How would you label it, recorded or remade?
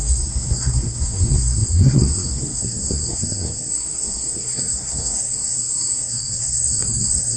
remade